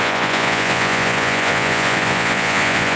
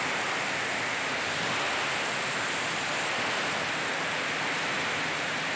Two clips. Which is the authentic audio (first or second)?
second